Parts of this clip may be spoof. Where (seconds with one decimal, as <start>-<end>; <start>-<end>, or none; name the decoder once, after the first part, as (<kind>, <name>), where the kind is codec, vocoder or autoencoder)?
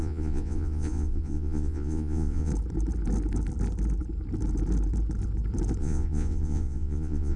0.0-2.5 (vocoder, Vocos); 5.8-7.4